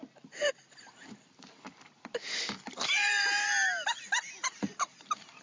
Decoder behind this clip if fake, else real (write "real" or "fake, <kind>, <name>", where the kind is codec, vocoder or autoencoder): real